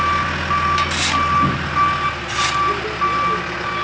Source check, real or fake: real